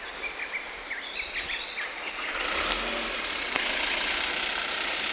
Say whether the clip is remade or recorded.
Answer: recorded